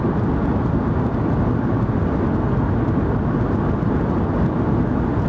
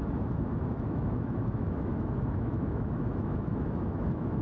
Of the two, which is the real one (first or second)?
first